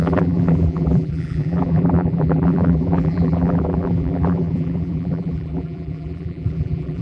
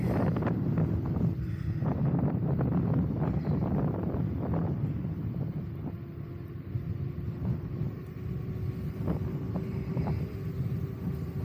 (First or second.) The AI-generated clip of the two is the first